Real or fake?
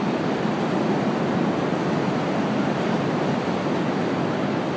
real